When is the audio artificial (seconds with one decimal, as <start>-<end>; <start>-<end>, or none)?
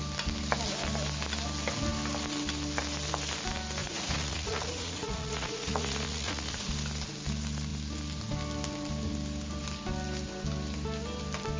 3.8-6.7